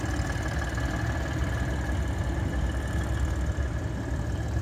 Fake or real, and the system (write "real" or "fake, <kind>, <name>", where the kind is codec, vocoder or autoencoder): real